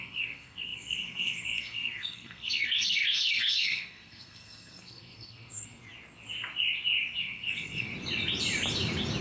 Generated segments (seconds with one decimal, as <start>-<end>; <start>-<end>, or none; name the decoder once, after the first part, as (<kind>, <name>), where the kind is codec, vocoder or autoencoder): 0.0-5.8 (codec, SNAC); 7.2-7.9